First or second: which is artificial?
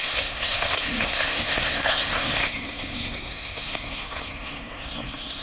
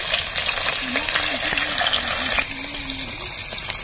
first